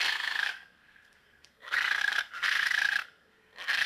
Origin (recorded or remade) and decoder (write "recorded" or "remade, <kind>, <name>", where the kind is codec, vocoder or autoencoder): remade, codec, SNAC